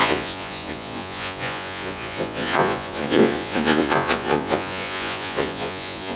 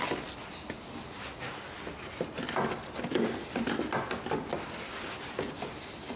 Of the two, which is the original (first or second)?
second